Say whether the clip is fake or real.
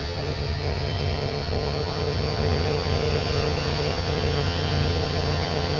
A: fake